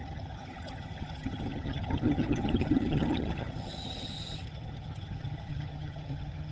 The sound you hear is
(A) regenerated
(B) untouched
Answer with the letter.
A